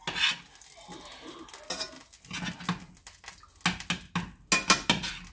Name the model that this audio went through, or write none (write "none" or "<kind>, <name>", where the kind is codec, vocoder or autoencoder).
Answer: none